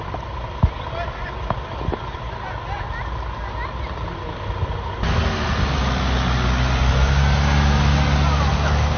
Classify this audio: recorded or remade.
recorded